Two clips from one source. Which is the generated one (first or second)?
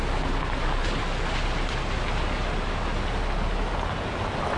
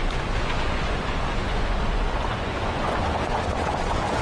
second